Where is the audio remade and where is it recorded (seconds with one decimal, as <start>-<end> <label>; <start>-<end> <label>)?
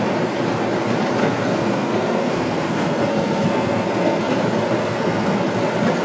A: 0.0-1.2 recorded; 1.2-4.2 remade; 4.2-4.8 recorded; 4.8-5.4 remade; 5.4-6.0 recorded